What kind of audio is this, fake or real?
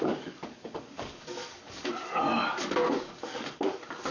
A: fake